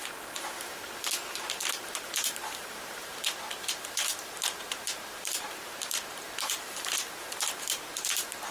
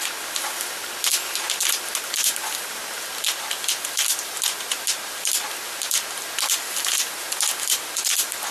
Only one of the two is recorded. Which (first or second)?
second